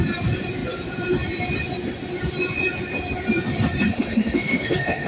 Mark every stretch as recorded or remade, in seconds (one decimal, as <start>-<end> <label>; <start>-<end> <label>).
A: 0.0-3.9 recorded; 3.9-5.1 remade

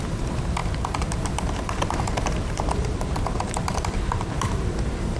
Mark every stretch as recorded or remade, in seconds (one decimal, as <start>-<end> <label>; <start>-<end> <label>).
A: 0.0-5.2 remade

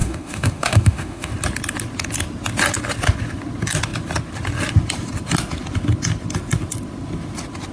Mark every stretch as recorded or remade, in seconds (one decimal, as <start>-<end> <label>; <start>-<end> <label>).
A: 0.0-1.3 remade; 1.3-7.7 recorded

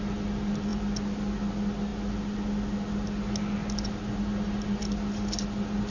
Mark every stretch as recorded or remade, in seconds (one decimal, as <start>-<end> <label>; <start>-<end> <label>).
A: 0.0-5.9 recorded

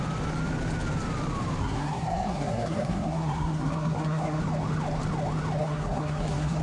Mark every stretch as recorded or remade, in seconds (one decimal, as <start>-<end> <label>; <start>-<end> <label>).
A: 0.0-1.6 recorded; 1.6-4.4 remade; 4.4-5.6 recorded; 5.6-6.6 remade

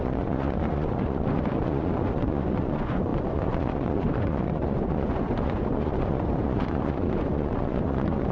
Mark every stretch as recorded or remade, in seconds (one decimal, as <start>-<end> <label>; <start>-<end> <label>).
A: 0.0-8.3 remade